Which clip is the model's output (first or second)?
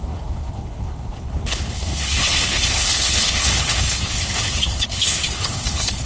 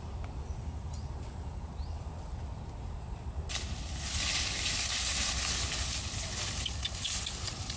first